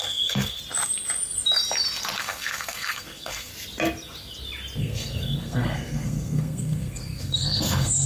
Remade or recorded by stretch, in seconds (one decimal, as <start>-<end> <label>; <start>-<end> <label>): 0.0-0.6 remade; 0.6-2.2 recorded; 2.2-3.5 remade; 3.5-4.8 recorded; 4.8-8.1 remade